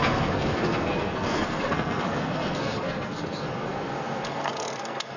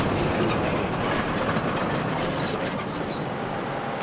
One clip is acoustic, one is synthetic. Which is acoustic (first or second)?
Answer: second